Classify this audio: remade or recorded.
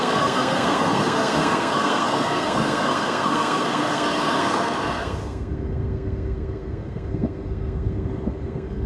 remade